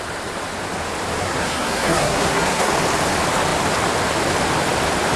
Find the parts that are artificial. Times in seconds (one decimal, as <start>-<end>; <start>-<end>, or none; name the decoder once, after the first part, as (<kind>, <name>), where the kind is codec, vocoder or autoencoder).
1.2-2.7 (codec, SNAC)